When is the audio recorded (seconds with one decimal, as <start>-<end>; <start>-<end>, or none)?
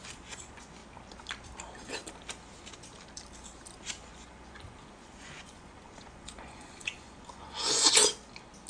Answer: 0.8-4.1; 8.0-8.7